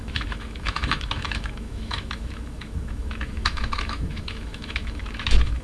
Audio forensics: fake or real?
fake